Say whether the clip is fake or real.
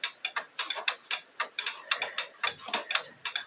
real